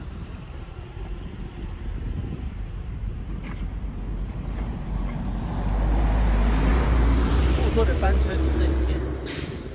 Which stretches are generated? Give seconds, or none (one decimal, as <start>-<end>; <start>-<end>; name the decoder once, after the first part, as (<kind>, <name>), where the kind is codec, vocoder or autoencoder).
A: 0.0-9.7 (vocoder, BigVGAN v2)